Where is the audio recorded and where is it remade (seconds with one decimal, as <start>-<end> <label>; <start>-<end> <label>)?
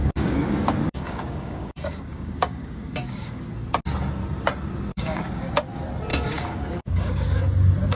0.0-3.4 remade; 3.4-4.9 recorded; 4.9-5.5 remade; 5.5-6.1 recorded; 6.1-7.4 remade; 7.4-8.0 recorded